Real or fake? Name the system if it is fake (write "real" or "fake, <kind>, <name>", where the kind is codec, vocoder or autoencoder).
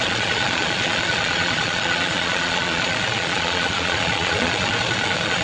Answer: fake, vocoder, Vocos